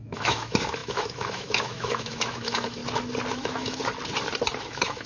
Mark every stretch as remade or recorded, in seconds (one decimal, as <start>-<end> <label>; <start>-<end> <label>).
0.0-2.8 remade; 2.8-3.3 recorded; 3.3-3.8 remade; 3.8-4.6 recorded; 4.6-5.1 remade